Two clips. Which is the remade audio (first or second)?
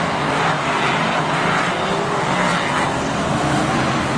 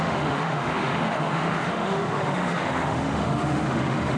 second